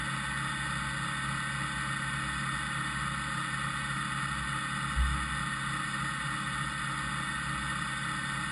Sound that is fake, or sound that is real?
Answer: real